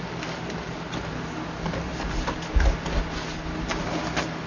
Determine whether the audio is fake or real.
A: real